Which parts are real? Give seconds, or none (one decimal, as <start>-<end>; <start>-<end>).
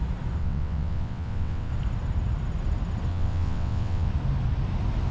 0.0-0.4; 1.7-3.1; 4.1-5.1